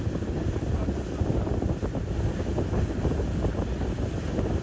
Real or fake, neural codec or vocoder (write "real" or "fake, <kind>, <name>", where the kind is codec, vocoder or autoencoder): real